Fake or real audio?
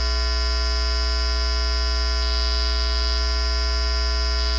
real